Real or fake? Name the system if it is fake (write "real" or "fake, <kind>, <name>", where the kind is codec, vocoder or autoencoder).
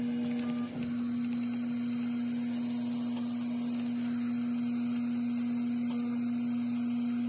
real